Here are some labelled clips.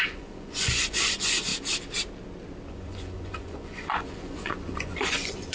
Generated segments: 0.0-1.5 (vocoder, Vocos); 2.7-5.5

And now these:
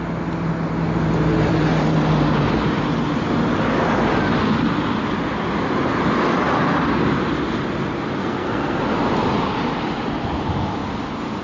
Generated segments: 8.2-8.8 (codec, SNAC)

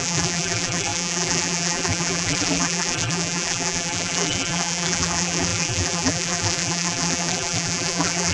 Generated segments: 0.0-8.3 (vocoder, BigVGAN v2)

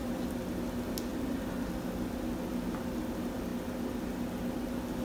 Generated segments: none

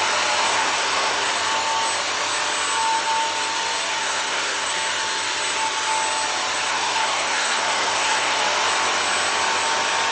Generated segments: 0.5-1.3 (codec, SNAC); 3.9-4.7; 6.7-8.4